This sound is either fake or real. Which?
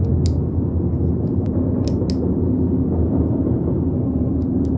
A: real